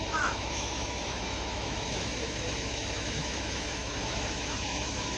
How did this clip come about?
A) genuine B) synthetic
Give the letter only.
B